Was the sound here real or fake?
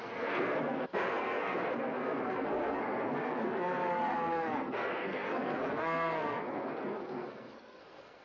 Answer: fake